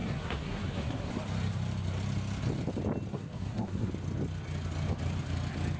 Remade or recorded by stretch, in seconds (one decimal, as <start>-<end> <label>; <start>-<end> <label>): 0.0-1.1 remade; 1.1-3.1 recorded; 3.1-3.9 remade; 3.9-5.8 recorded